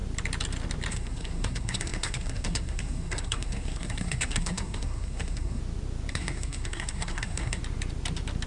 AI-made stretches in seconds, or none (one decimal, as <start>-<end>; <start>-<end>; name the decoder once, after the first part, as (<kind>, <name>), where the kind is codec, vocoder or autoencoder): 0.9-5.6 (codec, SNAC); 6.1-7.6